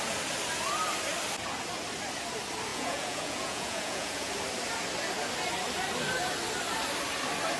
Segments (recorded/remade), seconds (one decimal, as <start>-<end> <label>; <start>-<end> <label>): 0.0-2.7 recorded; 2.7-4.3 remade; 4.3-7.6 recorded